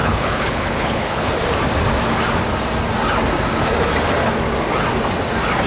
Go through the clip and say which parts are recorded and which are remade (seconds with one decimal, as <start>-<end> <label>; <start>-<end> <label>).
0.0-1.3 remade; 1.3-5.7 recorded

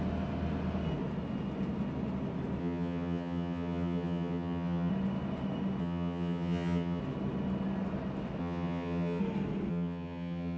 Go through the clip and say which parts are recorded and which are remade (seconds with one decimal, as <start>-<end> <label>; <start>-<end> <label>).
0.0-2.6 recorded; 2.6-4.9 remade; 4.9-5.8 recorded; 5.8-7.0 remade; 7.0-8.4 recorded; 8.4-9.2 remade; 9.2-9.7 recorded; 9.7-10.6 remade